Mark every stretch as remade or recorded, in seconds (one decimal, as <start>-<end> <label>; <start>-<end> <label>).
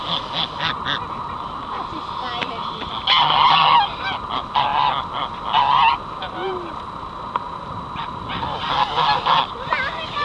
0.0-10.2 recorded